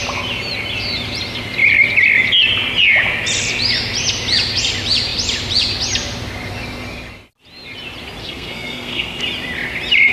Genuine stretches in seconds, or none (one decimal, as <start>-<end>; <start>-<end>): 0.0-8.2; 9.2-10.1